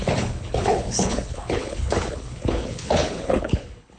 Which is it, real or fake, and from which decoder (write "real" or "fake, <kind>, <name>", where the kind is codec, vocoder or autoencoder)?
fake, codec, HILCodec